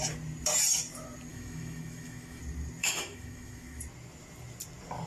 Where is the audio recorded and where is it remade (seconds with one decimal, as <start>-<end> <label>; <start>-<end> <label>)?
0.0-1.3 recorded; 1.3-2.4 remade; 2.4-2.8 recorded; 2.8-3.8 remade; 3.8-5.1 recorded

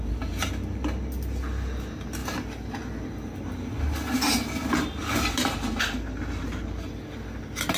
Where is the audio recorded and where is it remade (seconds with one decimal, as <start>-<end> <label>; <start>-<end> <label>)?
0.0-7.8 recorded

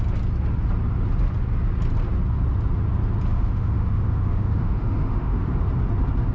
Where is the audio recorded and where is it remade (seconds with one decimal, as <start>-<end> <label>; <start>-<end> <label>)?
0.0-3.3 recorded; 3.3-5.5 remade; 5.5-6.3 recorded